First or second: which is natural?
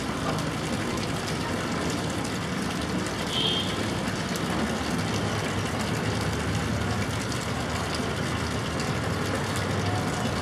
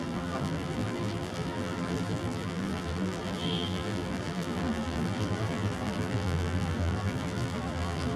first